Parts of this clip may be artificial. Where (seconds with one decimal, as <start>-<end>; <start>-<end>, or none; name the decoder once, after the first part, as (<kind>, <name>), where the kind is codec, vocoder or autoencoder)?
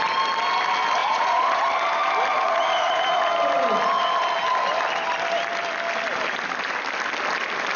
1.0-1.6 (vocoder, Vocos); 2.3-3.3